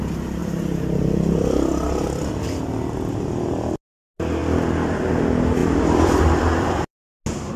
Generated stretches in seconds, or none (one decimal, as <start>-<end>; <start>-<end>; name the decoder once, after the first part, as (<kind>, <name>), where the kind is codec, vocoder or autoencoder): 0.4-3.8 (vocoder, BigVGAN v2); 4.4-5.1; 5.6-7.0